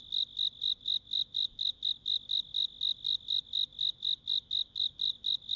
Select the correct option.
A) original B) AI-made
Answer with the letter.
A